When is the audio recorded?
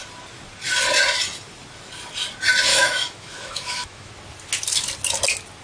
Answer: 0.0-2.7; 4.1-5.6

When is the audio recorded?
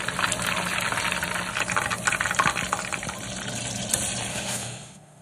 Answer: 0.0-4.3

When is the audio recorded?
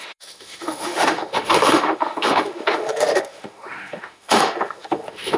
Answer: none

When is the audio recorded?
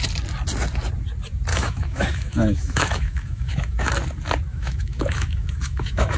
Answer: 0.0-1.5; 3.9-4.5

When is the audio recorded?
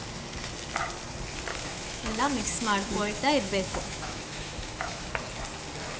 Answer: 0.0-1.5; 5.1-6.0